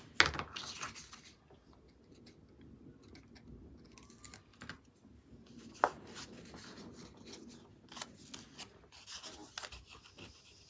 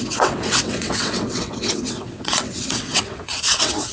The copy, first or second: second